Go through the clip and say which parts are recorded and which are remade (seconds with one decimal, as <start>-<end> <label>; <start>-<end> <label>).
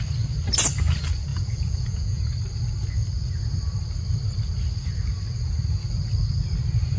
0.0-1.3 recorded; 1.3-2.2 remade; 2.2-7.0 recorded